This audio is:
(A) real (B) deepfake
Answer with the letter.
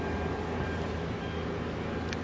A